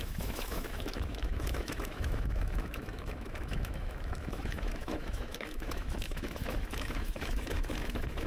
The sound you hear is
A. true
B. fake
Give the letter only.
B